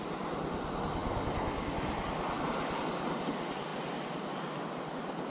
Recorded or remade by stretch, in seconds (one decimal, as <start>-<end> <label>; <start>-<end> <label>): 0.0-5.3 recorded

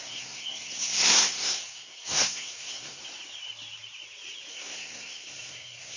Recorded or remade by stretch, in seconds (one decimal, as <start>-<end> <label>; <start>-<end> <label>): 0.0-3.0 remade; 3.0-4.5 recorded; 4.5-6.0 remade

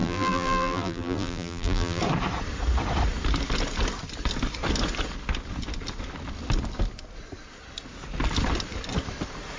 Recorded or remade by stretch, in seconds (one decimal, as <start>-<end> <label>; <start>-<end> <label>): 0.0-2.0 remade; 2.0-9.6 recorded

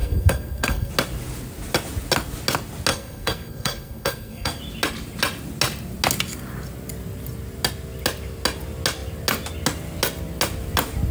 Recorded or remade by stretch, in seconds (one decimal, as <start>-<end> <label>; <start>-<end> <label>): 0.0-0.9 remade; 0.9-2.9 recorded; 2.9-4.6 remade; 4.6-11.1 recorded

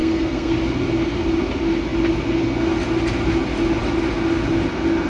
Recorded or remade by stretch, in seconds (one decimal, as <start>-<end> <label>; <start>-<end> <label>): 0.0-0.5 remade; 0.5-5.1 recorded

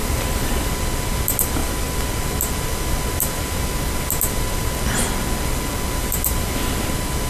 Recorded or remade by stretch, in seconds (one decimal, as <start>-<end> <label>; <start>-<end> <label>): 0.0-0.7 remade; 0.7-6.0 recorded; 6.0-6.7 remade; 6.7-7.3 recorded

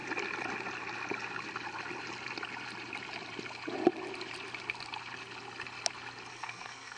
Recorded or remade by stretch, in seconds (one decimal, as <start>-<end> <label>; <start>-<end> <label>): 0.0-6.3 recorded; 6.3-7.0 remade